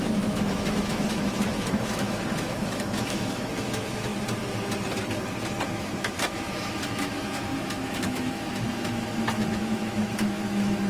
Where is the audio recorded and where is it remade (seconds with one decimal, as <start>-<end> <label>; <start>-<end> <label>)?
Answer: 0.0-4.1 remade; 4.1-5.7 recorded; 5.7-10.9 remade